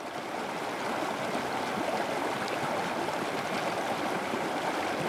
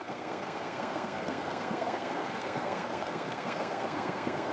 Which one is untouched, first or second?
first